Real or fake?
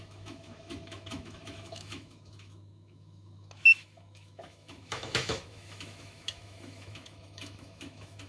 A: fake